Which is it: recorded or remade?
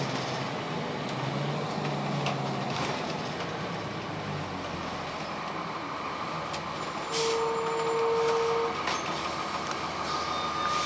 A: recorded